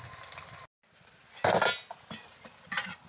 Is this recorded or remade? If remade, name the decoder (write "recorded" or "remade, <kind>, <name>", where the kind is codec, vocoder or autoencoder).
recorded